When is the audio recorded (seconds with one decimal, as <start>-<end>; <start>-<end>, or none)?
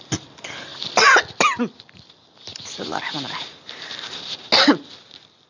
0.0-2.5; 4.5-5.5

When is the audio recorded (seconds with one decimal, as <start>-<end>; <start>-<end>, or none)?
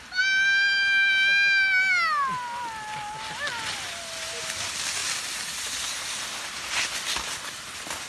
0.0-8.1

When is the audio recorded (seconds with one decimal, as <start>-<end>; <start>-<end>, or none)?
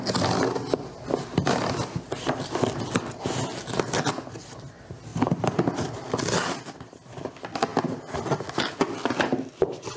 0.0-10.0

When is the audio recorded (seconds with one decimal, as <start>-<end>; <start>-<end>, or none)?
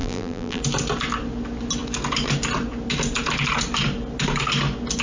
0.6-5.0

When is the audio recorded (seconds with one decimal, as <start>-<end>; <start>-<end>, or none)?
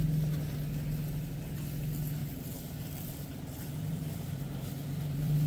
0.0-2.2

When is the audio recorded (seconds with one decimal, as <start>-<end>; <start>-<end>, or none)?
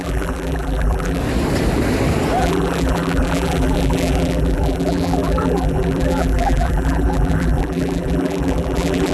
1.2-2.4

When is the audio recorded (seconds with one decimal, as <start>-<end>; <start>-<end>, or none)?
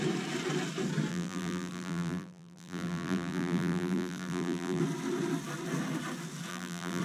0.0-1.1; 4.8-6.5